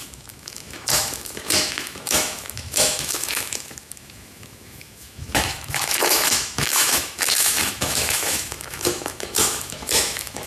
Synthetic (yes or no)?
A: yes